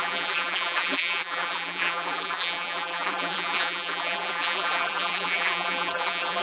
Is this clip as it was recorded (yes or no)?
no